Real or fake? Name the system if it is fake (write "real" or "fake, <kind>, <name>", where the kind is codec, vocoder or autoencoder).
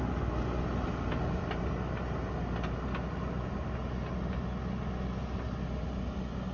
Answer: real